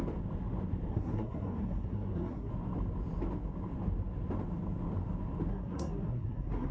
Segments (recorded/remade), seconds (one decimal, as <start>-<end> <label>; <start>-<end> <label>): 0.0-0.9 recorded; 0.9-2.5 remade; 2.5-5.5 recorded; 5.5-6.7 remade